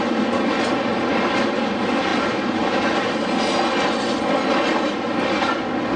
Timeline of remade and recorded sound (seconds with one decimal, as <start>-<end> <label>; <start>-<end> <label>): 0.0-0.9 recorded; 0.9-1.6 remade; 1.6-6.0 recorded